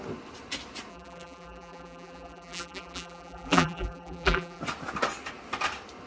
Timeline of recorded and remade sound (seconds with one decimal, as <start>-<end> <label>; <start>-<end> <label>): 0.0-0.9 recorded; 0.9-4.6 remade; 4.6-6.1 recorded